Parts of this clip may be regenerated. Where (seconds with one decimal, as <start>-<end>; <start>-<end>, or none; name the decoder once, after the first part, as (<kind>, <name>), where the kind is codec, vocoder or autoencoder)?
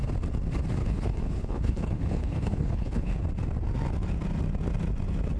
0.8-3.2 (codec, HILCodec)